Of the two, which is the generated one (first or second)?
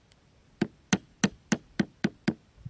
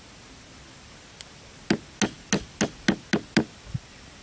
first